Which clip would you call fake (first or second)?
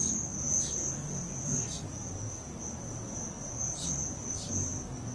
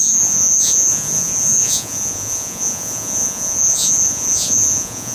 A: second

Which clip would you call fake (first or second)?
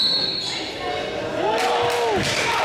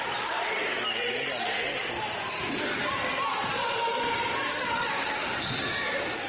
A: second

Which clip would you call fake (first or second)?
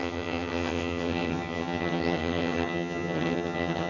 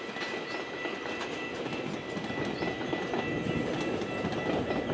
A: first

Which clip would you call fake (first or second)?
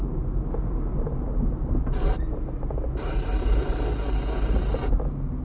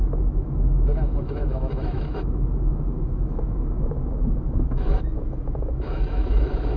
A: second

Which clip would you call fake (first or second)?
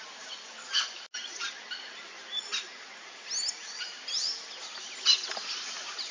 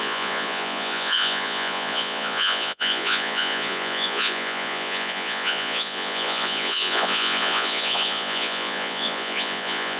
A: second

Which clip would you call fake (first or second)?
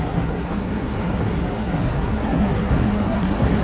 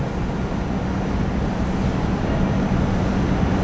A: first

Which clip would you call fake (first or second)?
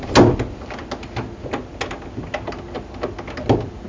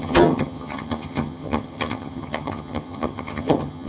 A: second